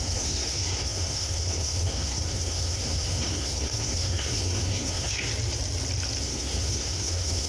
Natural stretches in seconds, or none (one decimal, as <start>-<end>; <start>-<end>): 5.3-6.2